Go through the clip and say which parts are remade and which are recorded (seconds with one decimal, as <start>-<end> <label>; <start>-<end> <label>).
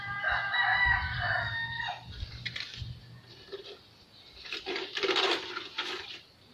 0.0-6.5 recorded